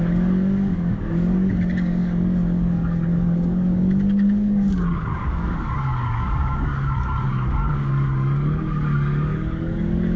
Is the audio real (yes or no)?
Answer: no